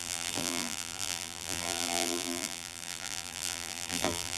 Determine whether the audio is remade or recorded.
remade